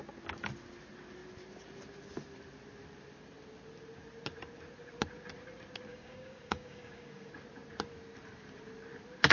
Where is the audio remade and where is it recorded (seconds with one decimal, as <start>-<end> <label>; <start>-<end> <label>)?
0.0-5.9 recorded; 5.9-7.3 remade; 7.3-9.3 recorded